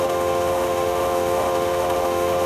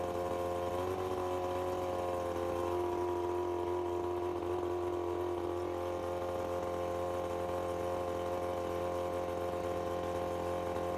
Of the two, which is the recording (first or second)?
second